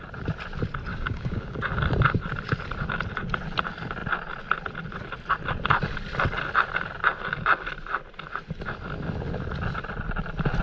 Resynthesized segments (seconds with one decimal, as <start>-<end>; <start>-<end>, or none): 0.9-1.6